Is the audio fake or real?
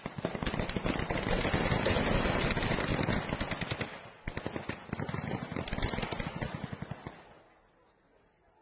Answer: real